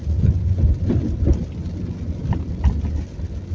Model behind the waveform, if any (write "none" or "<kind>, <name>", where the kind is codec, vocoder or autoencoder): none